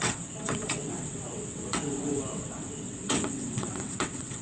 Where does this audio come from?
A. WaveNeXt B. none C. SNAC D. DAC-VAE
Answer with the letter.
A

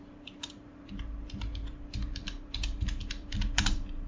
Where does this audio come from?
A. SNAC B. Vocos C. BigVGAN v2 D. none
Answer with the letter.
C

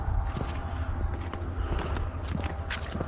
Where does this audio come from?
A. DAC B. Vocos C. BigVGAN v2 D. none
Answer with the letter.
D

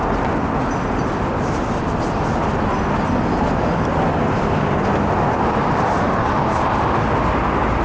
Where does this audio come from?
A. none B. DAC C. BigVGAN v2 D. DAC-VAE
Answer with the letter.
A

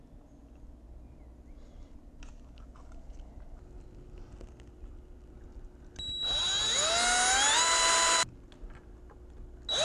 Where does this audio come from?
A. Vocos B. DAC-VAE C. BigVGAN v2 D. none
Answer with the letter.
D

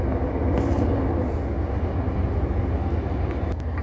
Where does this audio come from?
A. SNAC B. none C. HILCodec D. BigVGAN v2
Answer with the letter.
B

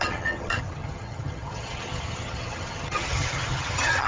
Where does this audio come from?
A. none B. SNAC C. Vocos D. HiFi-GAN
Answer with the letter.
D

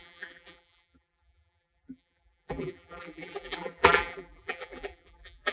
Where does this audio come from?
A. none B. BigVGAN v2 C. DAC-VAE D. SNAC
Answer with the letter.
B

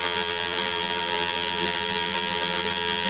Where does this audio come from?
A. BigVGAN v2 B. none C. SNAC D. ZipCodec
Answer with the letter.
A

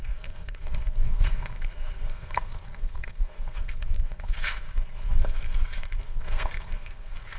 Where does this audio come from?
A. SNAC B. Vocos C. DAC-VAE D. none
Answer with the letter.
A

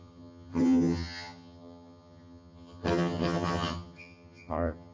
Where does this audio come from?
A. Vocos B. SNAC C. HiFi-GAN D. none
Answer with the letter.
C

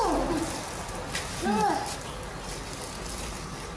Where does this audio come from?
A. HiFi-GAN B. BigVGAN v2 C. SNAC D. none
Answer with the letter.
D